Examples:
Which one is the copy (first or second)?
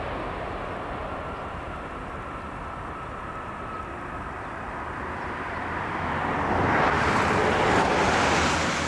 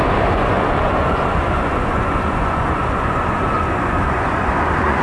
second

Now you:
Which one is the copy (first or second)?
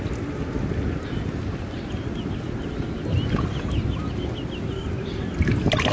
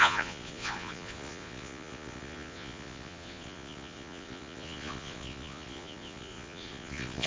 second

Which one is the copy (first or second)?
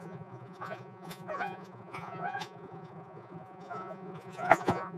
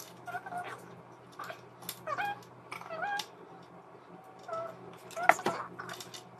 first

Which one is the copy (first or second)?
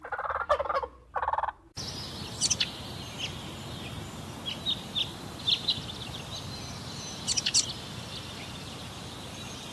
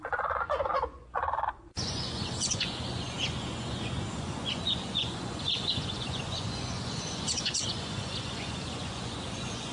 second